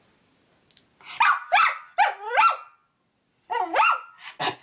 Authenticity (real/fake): real